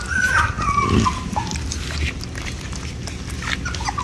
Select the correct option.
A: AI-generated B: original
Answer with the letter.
B